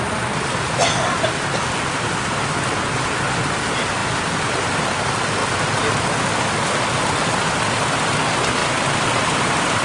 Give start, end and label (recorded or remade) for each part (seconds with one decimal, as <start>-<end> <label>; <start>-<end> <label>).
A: 0.0-4.0 recorded; 4.0-5.0 remade; 5.0-5.4 recorded; 5.4-5.9 remade; 5.9-8.6 recorded; 8.6-9.8 remade